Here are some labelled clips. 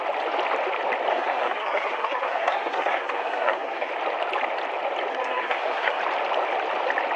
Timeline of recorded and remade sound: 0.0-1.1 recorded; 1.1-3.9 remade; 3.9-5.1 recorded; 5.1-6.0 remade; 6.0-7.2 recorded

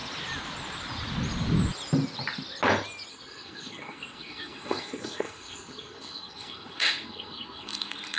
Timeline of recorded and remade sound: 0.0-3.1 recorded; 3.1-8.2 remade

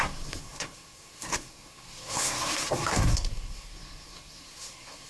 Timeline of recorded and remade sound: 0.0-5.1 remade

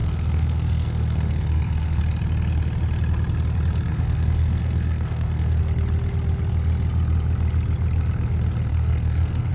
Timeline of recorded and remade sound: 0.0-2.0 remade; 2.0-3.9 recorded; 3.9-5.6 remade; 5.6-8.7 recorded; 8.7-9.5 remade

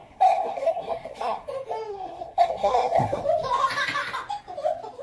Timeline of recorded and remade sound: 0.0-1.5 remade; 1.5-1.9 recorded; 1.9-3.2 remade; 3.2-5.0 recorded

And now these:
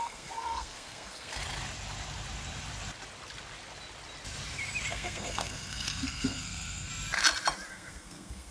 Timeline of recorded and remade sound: 0.0-1.4 remade; 1.4-4.9 recorded; 4.9-6.9 remade; 6.9-7.7 recorded; 7.7-8.5 remade